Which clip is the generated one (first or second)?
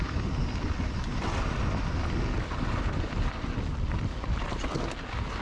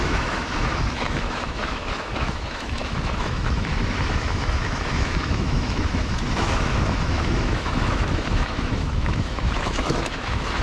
second